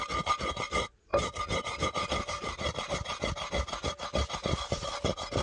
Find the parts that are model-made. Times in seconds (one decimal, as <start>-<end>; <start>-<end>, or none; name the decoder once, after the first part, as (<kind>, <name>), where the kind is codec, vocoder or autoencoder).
none